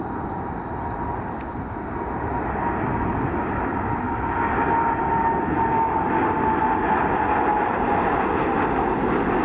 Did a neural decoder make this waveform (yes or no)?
no